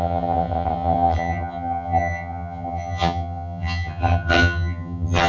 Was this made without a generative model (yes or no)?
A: no